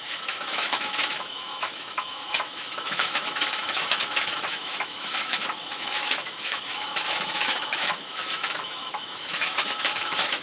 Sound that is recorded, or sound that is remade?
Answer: remade